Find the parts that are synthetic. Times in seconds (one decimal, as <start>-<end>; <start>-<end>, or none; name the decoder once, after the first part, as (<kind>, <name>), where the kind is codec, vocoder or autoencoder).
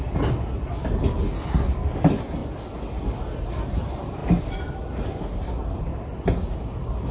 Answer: 4.2-5.8 (vocoder, BigVGAN v2)